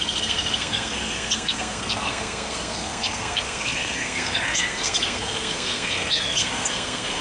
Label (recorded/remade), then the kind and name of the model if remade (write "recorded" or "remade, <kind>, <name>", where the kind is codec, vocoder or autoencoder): remade, codec, SNAC